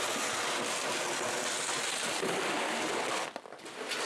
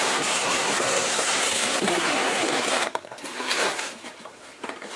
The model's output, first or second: second